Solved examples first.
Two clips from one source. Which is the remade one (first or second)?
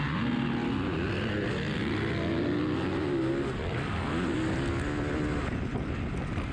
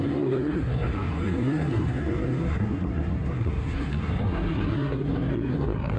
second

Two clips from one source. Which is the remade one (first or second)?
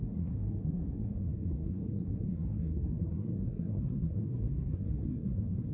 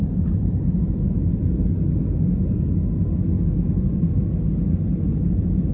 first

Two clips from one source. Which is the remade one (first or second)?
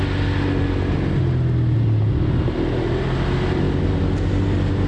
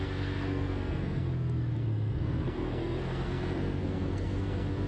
second